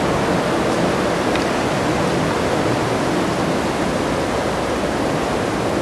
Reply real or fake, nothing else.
real